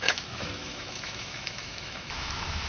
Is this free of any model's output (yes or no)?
no